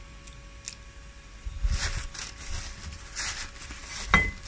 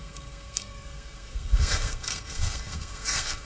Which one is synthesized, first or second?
second